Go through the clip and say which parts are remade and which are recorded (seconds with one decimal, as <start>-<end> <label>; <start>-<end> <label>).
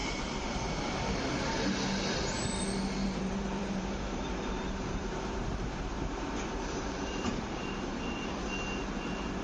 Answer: 0.0-0.6 remade; 0.6-3.0 recorded; 3.0-8.0 remade; 8.0-9.4 recorded